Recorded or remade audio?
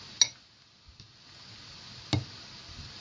recorded